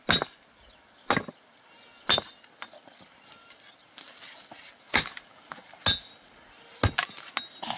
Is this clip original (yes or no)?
yes